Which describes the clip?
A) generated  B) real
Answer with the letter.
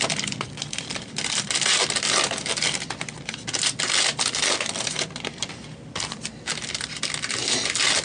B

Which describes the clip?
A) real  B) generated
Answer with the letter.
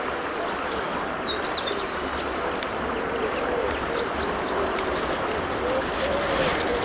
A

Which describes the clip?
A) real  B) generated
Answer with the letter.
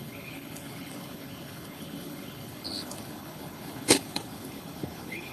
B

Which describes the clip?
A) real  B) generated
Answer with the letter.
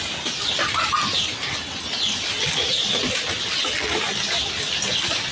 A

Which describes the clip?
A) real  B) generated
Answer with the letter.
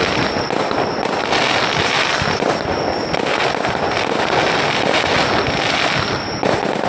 A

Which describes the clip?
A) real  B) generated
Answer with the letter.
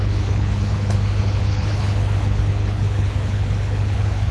B